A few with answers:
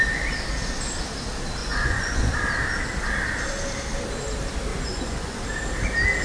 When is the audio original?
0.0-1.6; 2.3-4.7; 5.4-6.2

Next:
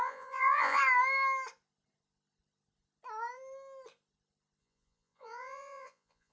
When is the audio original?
0.8-4.6

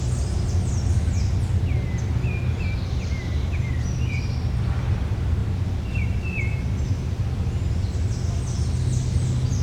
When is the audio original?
0.0-9.6

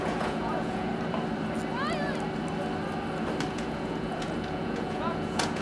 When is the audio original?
0.9-3.5